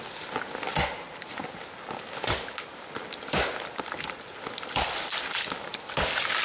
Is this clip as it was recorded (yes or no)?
yes